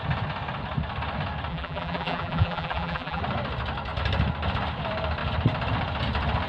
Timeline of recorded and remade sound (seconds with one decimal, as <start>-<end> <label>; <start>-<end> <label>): 0.0-1.5 recorded; 1.5-3.2 remade; 3.2-6.5 recorded